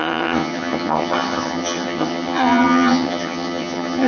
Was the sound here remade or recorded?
remade